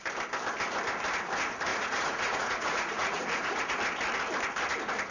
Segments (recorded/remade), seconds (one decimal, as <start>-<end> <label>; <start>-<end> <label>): 0.0-1.7 recorded; 1.7-3.8 remade; 3.8-5.1 recorded